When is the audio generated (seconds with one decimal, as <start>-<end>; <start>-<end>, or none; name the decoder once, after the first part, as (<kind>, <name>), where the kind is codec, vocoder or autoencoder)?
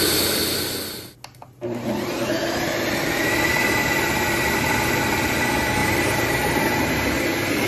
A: 5.8-6.8 (vocoder, BigVGAN v2)